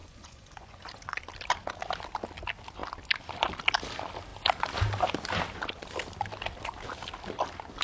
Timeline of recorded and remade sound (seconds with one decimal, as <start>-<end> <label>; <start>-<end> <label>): 0.0-1.2 remade; 1.2-7.8 recorded